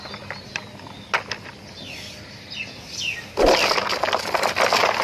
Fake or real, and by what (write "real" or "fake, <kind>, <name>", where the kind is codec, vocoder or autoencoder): real